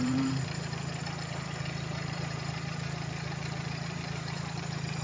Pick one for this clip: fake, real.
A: fake